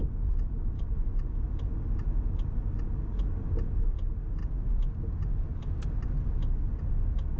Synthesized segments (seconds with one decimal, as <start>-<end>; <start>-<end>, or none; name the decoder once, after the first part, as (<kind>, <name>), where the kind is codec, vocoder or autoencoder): none